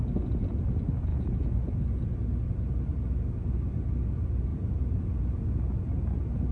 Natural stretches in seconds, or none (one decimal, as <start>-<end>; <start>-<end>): 0.0-1.1; 1.8-4.5; 5.2-6.5